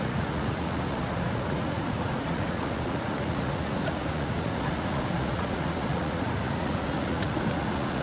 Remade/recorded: remade